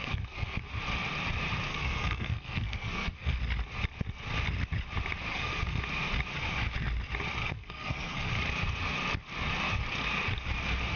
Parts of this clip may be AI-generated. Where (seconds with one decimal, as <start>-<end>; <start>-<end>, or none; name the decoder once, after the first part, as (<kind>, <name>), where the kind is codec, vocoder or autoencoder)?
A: 0.0-0.6 (codec, SNAC); 1.7-3.4; 5.3-5.8; 7.4-8.3